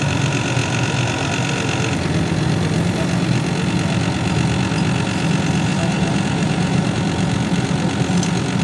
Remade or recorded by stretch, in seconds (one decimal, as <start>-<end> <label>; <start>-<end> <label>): 0.0-5.7 recorded; 5.7-7.0 remade; 7.0-8.6 recorded